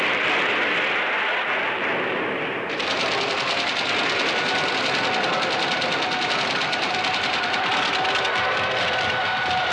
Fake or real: real